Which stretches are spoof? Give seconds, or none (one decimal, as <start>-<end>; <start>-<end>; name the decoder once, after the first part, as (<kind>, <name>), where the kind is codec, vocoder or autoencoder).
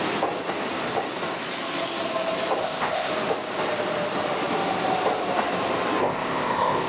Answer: 2.6-3.1 (codec, ZipCodec); 6.0-6.9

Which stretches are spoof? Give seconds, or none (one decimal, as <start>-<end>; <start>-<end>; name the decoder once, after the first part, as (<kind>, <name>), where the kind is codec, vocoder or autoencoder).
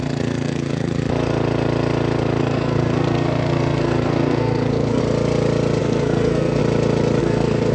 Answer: 0.0-1.0 (codec, SNAC); 2.4-5.0; 5.8-6.6; 7.2-7.7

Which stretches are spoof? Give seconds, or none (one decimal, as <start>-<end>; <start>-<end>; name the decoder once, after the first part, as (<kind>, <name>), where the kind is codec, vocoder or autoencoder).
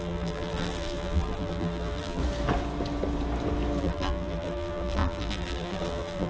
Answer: 0.0-2.2 (vocoder, BigVGAN v2); 3.8-6.3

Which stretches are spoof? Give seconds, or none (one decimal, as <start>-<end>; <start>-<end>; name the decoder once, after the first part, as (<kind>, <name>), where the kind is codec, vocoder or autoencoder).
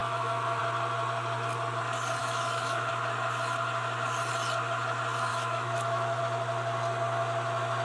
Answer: 0.0-0.6 (autoencoder, DAC-VAE); 2.2-2.9; 5.3-6.2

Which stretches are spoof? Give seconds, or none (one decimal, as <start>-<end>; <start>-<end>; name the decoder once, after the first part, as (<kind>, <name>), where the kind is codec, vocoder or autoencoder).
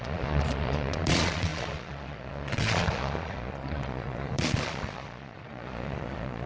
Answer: 0.0-6.5 (vocoder, Vocos)